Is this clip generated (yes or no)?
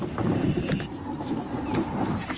yes